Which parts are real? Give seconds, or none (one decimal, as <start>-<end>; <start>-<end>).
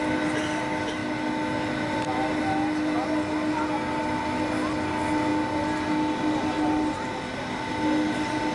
0.0-8.5